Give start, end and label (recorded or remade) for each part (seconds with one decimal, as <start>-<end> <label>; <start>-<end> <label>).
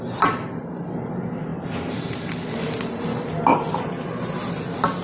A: 0.0-5.0 recorded